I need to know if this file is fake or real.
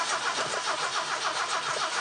real